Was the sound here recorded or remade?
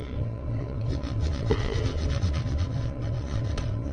remade